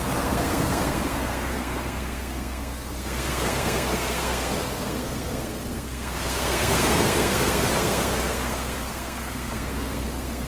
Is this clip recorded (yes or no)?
no